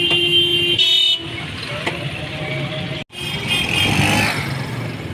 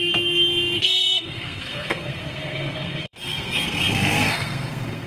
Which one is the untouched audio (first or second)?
first